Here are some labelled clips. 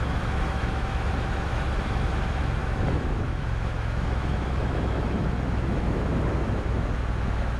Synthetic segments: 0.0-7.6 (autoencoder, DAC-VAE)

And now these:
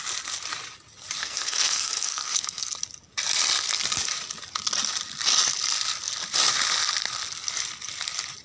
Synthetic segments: 1.2-2.7 (codec, SNAC)

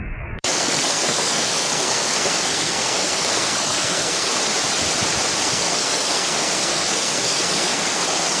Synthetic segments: 0.0-4.3 (codec, SNAC); 5.4-8.4

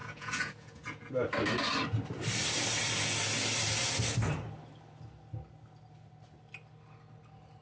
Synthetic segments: 0.0-1.1 (vocoder, Vocos)

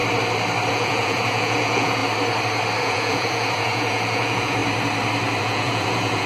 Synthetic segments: 0.7-2.0 (vocoder, Vocos); 2.8-4.6; 5.4-6.3

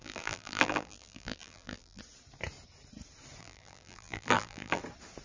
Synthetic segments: 0.0-2.0 (vocoder, BigVGAN v2); 3.4-4.8